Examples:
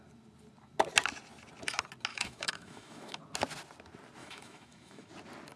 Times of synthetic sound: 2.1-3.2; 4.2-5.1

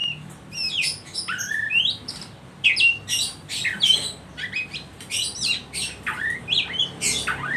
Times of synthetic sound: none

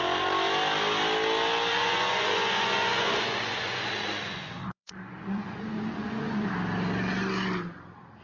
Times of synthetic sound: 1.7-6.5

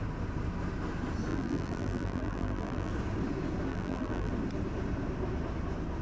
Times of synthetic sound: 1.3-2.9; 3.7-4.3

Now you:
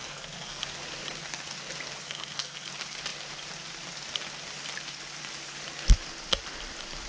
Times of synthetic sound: 0.0-0.6; 2.0-2.7

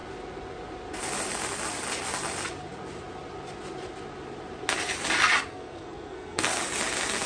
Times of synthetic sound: 5.5-6.6